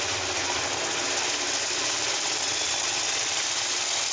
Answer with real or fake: real